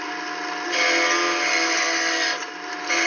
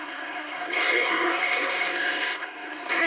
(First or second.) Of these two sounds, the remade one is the second